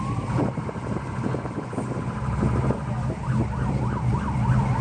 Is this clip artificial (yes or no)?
no